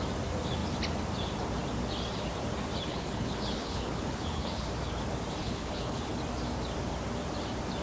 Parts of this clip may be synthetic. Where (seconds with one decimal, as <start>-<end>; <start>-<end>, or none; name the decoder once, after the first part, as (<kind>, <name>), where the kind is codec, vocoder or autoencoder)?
2.9-4.7 (codec, HILCodec); 5.4-6.1